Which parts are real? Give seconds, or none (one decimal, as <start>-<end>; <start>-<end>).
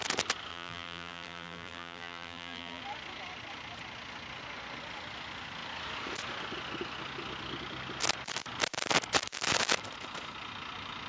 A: 0.0-0.5; 2.8-11.1